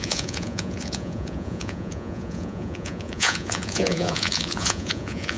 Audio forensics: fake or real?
fake